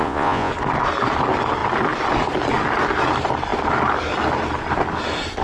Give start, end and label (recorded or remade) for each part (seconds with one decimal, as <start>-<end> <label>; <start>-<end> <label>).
0.0-0.5 remade; 0.5-5.4 recorded